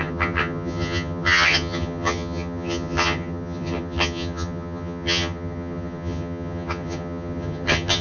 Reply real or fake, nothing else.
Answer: fake